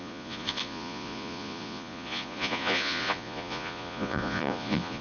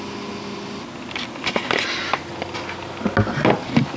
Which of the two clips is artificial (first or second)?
first